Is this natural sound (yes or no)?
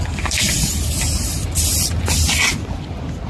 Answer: yes